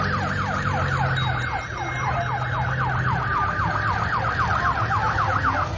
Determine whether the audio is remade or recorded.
recorded